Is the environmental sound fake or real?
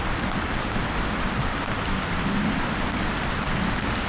real